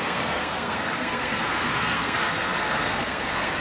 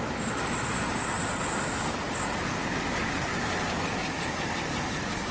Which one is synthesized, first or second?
first